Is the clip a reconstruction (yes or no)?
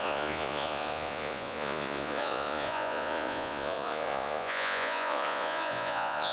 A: yes